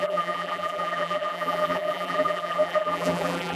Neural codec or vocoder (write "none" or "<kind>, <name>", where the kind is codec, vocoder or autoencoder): vocoder, BigVGAN v2